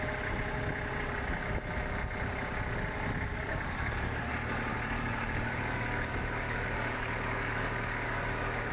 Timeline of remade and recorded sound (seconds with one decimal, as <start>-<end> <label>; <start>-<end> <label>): 0.0-3.3 recorded; 3.3-4.3 remade; 4.3-4.7 recorded; 4.7-8.7 remade